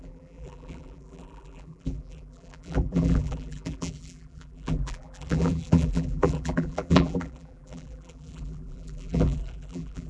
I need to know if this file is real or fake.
fake